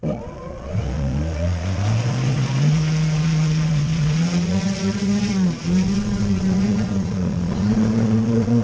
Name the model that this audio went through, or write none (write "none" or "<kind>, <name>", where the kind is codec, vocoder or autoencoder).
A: vocoder, Vocos